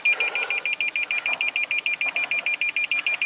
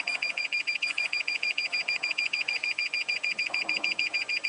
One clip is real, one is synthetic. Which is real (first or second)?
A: first